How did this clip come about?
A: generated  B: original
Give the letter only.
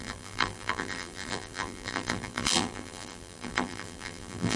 A